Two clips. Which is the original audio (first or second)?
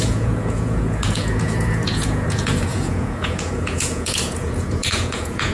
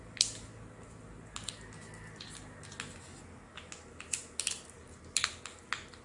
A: second